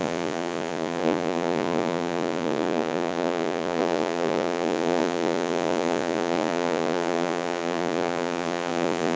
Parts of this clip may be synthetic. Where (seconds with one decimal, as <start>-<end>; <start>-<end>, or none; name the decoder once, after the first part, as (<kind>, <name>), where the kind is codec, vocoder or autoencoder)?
0.0-9.2 (vocoder, Vocos)